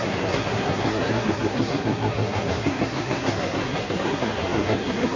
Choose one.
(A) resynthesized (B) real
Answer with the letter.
A